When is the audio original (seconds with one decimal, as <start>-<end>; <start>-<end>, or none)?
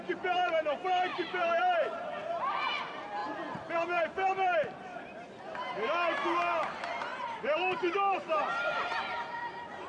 0.0-1.1; 2.5-3.2; 5.0-7.1